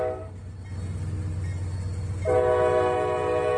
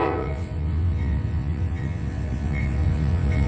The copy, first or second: second